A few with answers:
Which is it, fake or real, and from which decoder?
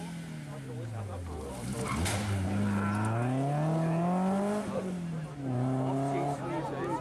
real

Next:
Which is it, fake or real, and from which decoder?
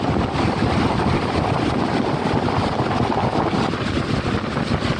real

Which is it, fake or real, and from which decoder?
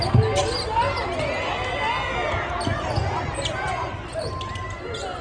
real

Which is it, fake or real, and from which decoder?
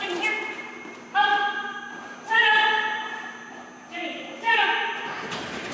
fake, vocoder, BigVGAN v2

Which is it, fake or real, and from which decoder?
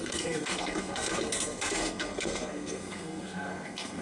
fake, codec, SNAC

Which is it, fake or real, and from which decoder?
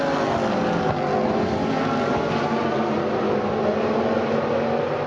real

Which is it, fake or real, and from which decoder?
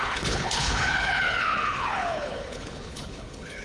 fake, codec, HILCodec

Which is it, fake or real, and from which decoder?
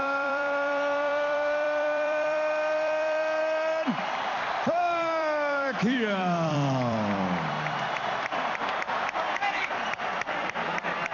fake, vocoder, BigVGAN v2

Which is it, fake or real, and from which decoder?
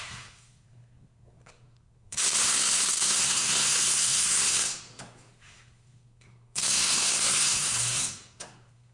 fake, codec, SNAC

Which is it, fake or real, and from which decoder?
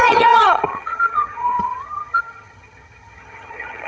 fake, vocoder, HiFi-GAN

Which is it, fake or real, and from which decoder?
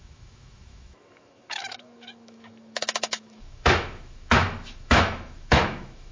fake, autoencoder, DAC-VAE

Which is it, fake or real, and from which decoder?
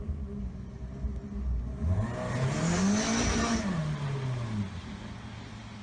real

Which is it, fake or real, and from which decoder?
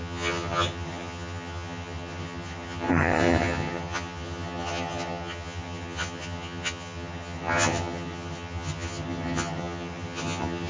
fake, vocoder, HiFi-GAN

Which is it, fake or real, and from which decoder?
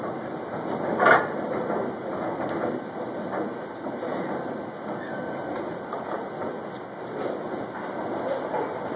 real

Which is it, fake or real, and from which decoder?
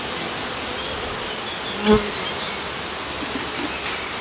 real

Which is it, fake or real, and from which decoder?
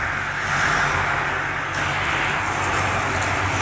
real